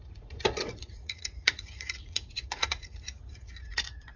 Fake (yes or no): yes